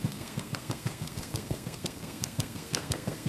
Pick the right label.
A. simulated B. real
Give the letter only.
A